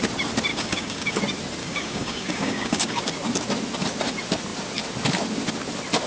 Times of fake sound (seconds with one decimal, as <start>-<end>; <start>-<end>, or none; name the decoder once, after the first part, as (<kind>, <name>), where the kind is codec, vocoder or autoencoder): 0.5-1.2 (codec, DAC); 1.6-3.0